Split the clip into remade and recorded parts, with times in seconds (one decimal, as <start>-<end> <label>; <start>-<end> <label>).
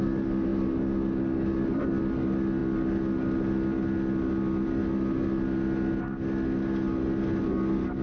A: 0.0-8.0 recorded